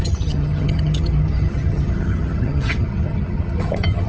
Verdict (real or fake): fake